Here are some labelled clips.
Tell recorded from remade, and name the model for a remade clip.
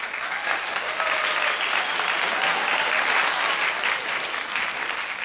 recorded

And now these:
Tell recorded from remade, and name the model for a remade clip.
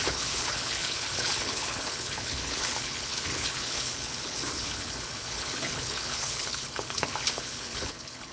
remade, codec, HILCodec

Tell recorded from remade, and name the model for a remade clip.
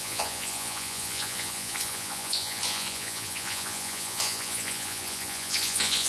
remade, vocoder, Vocos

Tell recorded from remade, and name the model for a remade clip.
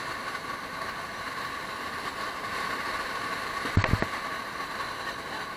recorded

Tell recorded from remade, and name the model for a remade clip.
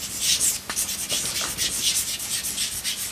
recorded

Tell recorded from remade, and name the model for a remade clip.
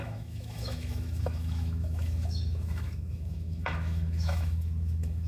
remade, autoencoder, DAC-VAE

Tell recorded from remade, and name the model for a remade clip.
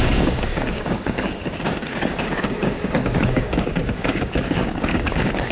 remade, codec, DAC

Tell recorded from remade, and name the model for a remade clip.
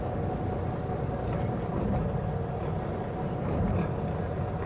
recorded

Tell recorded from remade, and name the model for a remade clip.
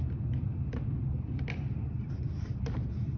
recorded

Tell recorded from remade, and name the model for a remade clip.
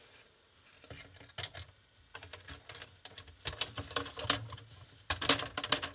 recorded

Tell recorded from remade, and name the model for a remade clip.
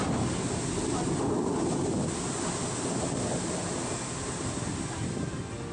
recorded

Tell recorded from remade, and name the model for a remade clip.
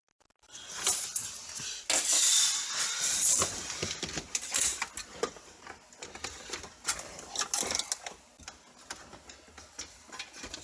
recorded